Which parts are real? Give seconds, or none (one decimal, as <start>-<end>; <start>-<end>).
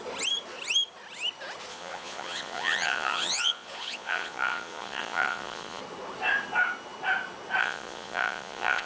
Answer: 0.0-1.7; 5.8-7.6